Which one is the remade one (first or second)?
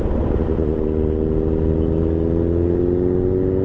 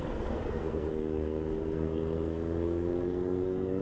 second